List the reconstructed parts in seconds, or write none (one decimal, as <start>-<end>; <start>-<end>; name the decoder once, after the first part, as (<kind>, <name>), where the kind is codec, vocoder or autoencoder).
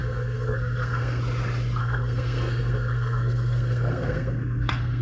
0.0-1.2 (codec, SNAC); 1.8-5.0